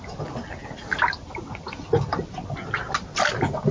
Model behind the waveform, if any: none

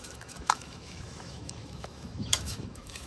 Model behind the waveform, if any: autoencoder, DAC-VAE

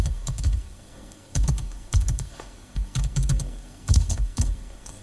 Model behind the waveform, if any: codec, SNAC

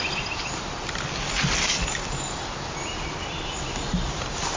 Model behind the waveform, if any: none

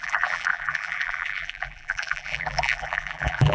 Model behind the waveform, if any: vocoder, BigVGAN v2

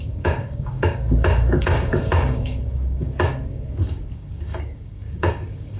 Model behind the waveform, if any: codec, DAC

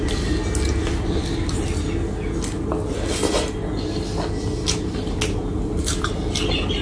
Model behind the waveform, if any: none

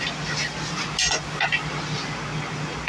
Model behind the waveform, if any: none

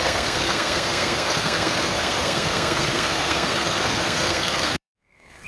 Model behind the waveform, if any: codec, SNAC